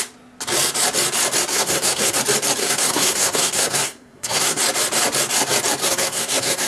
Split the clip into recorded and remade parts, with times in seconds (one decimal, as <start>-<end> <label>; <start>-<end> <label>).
0.0-1.5 recorded; 1.5-2.2 remade; 2.2-2.6 recorded; 2.6-4.6 remade; 4.6-5.8 recorded; 5.8-6.7 remade